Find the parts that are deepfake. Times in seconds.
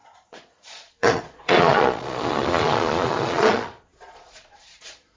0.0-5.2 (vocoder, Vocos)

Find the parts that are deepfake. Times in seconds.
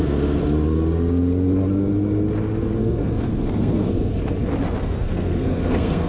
0.0-0.4 (codec, SNAC); 2.8-4.1; 4.8-6.1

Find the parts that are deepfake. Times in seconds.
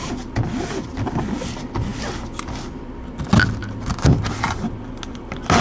none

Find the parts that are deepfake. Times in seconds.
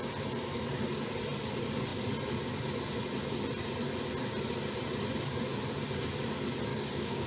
6.7-7.3 (codec, DAC)